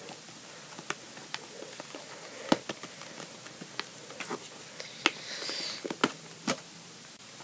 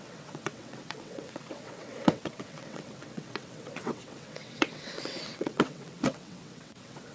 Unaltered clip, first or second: first